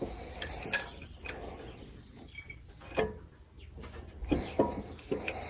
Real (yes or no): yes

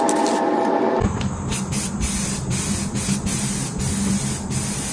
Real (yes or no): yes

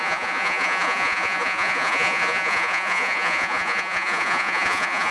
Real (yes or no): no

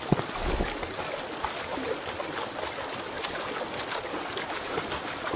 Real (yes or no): yes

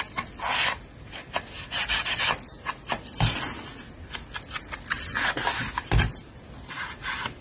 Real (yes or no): yes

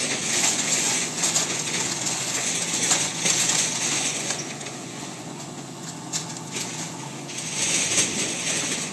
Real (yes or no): no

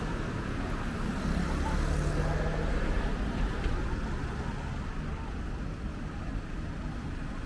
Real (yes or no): yes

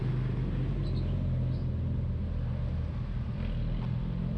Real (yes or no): yes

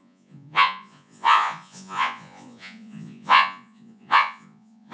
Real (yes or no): no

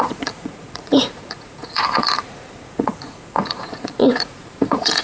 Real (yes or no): no